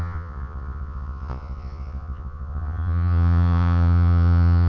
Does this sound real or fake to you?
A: fake